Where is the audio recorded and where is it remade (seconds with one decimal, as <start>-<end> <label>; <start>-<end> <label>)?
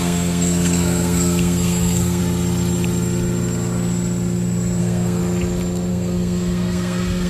0.0-2.2 remade; 2.2-4.8 recorded; 4.8-5.2 remade; 5.2-5.9 recorded; 5.9-7.3 remade